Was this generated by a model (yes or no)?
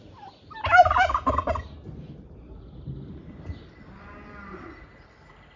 no